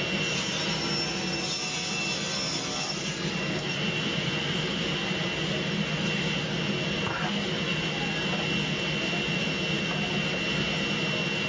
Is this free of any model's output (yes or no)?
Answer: yes